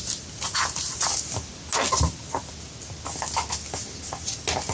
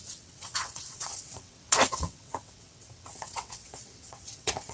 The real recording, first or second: first